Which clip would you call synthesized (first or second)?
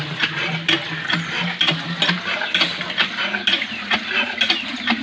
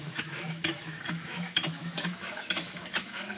second